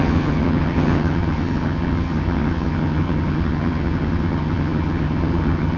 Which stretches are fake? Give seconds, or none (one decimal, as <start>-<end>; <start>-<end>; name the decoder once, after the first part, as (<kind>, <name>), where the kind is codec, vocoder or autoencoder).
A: 0.0-5.8 (vocoder, HiFi-GAN)